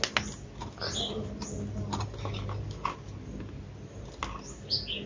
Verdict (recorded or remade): recorded